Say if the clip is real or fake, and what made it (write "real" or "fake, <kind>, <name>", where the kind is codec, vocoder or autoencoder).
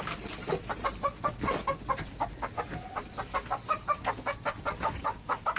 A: real